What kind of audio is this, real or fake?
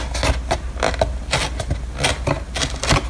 real